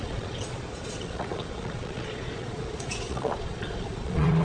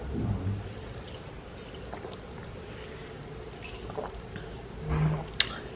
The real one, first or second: second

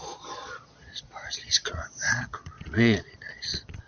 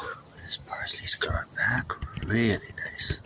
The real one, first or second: second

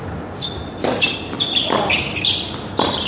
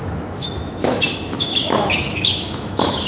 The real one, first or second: first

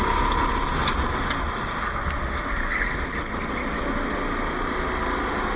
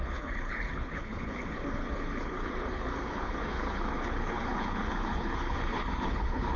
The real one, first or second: first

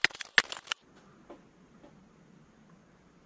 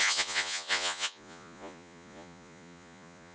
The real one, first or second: first